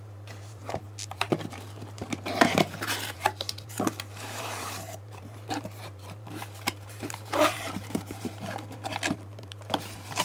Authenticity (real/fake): fake